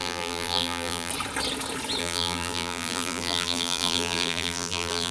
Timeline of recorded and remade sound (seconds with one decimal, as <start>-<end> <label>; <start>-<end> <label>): 0.0-1.1 remade; 1.1-2.0 recorded; 2.0-5.1 remade